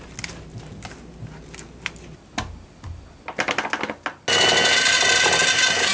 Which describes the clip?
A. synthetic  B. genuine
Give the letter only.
B